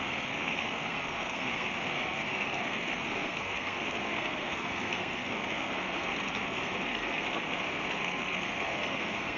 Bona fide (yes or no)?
no